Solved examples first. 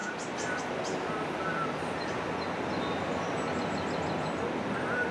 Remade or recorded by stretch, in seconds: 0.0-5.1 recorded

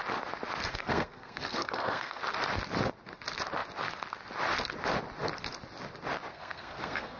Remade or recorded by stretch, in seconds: 0.0-0.7 recorded; 0.7-2.2 remade; 2.2-6.3 recorded; 6.3-7.2 remade

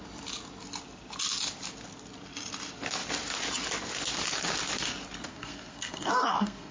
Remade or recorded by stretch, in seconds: 0.0-5.3 recorded; 5.3-6.7 remade

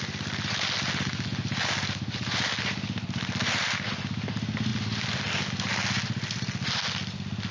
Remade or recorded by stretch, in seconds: 0.0-7.5 recorded

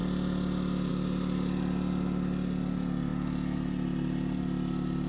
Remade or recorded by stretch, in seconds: 0.0-5.1 recorded

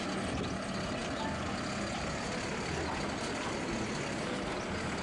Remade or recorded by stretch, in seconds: 0.0-5.0 recorded